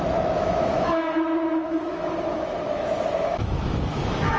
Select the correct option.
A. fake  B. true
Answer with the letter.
A